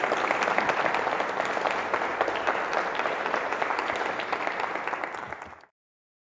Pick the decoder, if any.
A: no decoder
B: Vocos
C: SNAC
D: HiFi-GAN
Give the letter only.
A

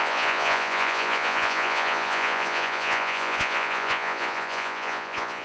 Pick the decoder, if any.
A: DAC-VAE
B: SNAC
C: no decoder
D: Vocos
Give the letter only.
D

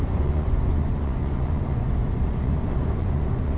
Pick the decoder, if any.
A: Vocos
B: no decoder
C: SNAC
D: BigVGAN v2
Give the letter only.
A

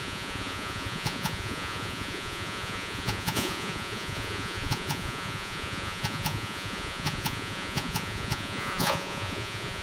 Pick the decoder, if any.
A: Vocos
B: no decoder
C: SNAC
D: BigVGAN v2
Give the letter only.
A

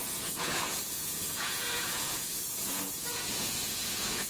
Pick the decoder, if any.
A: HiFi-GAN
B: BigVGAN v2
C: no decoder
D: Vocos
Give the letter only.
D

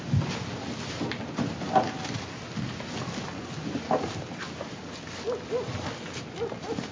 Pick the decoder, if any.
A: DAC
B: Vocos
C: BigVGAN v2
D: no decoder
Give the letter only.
D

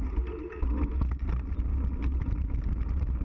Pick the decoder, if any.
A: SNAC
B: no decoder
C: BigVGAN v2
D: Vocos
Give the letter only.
B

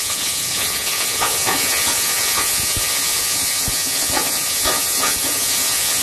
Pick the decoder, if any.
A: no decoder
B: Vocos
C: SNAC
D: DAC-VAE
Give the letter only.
B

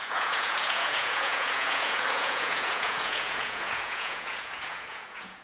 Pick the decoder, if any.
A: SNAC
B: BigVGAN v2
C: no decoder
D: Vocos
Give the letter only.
D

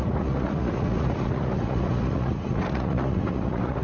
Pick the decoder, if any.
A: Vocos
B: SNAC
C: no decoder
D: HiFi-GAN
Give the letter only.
A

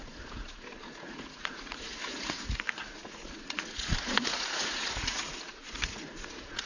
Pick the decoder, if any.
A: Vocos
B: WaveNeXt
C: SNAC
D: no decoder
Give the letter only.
A